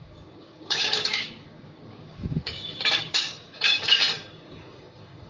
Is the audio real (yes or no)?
no